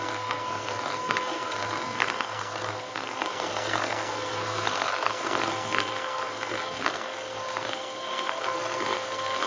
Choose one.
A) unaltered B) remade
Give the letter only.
B